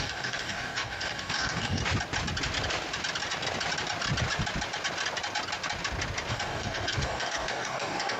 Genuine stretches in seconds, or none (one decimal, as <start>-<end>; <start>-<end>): 1.8-6.3